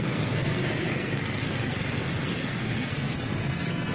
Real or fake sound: fake